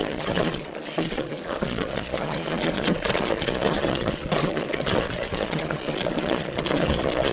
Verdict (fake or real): fake